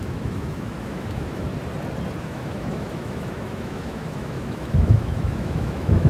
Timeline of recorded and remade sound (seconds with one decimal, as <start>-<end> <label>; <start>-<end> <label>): 0.0-1.5 remade; 1.5-2.2 recorded; 2.2-6.1 remade